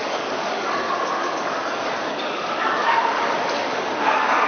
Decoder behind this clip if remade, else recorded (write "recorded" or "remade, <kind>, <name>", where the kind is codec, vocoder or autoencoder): remade, codec, DAC